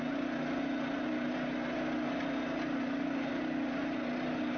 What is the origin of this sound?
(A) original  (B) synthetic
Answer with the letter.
A